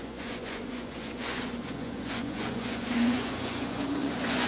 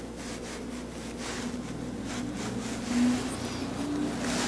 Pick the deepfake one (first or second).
first